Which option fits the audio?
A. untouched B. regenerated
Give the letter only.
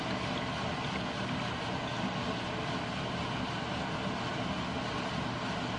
A